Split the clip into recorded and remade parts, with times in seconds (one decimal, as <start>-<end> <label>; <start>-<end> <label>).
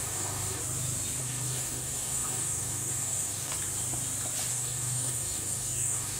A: 0.0-0.6 remade; 0.6-1.2 recorded; 1.2-3.5 remade; 3.5-4.5 recorded; 4.5-6.2 remade